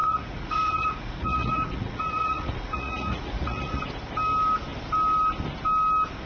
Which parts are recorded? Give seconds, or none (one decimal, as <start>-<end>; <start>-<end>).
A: 3.8-6.3